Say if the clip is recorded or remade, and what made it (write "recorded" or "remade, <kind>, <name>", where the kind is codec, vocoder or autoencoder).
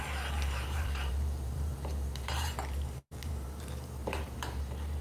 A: remade, vocoder, BigVGAN v2